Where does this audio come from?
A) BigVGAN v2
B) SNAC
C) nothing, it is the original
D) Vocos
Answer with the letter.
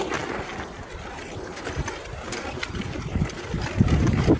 C